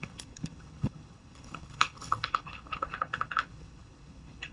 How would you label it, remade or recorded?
remade